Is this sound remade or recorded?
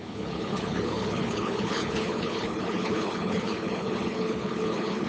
remade